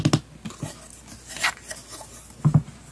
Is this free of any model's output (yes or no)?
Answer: yes